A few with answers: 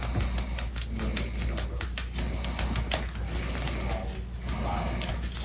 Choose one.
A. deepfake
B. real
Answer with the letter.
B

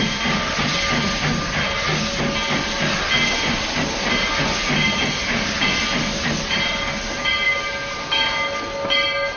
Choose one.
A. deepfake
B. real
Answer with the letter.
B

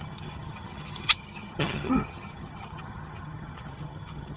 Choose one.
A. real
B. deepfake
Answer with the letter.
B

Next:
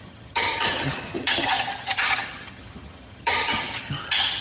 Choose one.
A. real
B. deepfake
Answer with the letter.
B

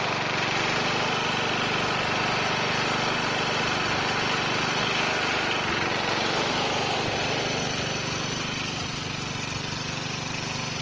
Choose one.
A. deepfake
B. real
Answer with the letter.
B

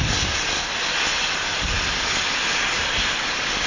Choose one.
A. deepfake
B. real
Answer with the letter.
B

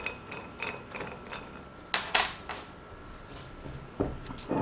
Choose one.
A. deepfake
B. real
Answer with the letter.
B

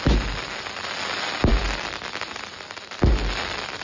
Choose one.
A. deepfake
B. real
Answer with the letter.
B